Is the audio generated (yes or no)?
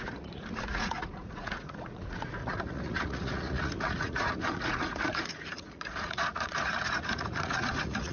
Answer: yes